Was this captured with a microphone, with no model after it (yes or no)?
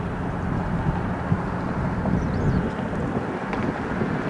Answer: yes